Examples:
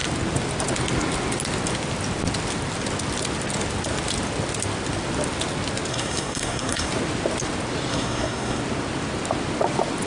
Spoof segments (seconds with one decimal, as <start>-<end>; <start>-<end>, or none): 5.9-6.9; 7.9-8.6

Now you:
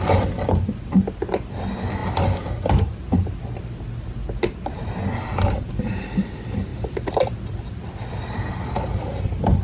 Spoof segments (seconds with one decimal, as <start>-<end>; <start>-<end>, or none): none

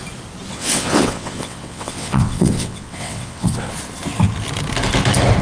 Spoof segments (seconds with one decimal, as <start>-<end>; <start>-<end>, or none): 0.5-3.7